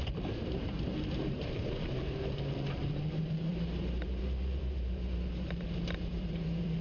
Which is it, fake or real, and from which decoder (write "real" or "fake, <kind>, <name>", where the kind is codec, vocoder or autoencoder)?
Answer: fake, vocoder, BigVGAN v2